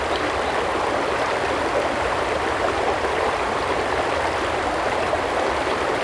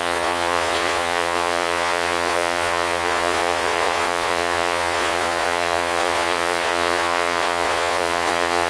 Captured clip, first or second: first